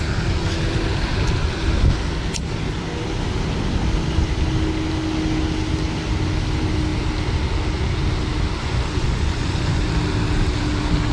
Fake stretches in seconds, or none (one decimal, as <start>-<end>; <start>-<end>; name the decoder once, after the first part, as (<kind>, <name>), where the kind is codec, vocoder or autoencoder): 8.6-9.8 (vocoder, Vocos)